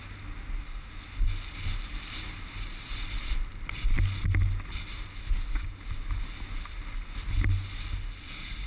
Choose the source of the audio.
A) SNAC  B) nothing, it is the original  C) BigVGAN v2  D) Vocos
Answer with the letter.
B